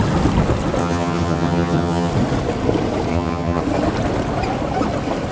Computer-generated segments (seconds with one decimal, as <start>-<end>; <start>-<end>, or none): 0.8-2.1; 3.1-3.6